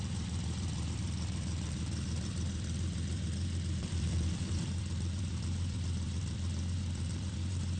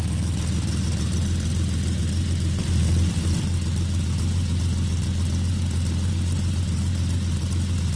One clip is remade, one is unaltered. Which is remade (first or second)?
first